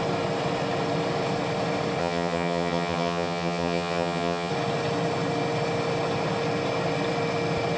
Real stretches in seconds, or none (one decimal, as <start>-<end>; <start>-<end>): 0.0-2.0; 4.5-7.8